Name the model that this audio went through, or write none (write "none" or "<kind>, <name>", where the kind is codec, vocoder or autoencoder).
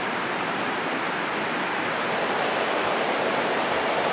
vocoder, BigVGAN v2